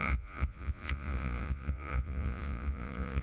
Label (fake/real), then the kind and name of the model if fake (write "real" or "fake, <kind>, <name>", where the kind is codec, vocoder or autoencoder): fake, vocoder, Vocos